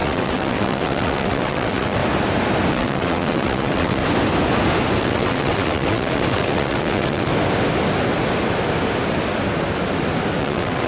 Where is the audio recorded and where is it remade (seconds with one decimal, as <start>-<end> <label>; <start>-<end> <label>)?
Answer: 0.0-2.0 remade; 2.0-2.7 recorded; 2.7-4.0 remade; 4.0-5.0 recorded; 5.0-7.3 remade; 7.3-10.4 recorded; 10.4-10.9 remade